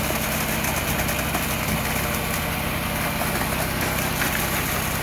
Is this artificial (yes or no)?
no